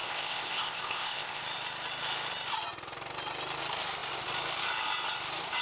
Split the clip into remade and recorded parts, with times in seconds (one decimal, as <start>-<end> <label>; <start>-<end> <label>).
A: 0.0-1.4 remade; 1.4-5.6 recorded